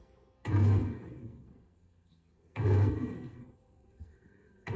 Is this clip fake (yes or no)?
yes